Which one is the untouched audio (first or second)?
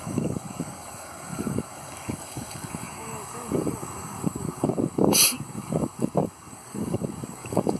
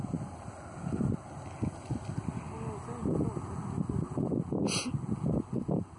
second